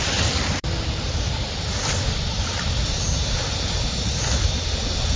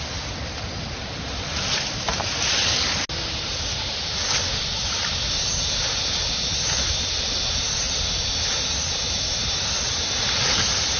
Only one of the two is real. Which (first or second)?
second